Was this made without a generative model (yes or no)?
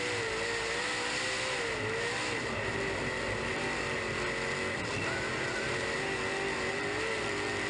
yes